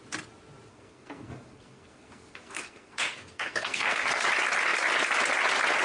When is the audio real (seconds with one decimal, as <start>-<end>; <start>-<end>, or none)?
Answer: 0.0-0.7; 4.2-5.8